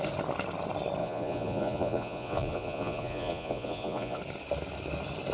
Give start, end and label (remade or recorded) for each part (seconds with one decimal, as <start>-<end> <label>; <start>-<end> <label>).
0.0-1.0 recorded; 1.0-4.2 remade; 4.2-5.3 recorded